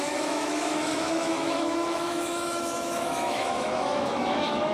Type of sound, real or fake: fake